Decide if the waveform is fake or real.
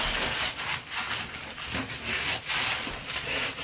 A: real